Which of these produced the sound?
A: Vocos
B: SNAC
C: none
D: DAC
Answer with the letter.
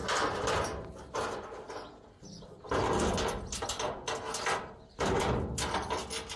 C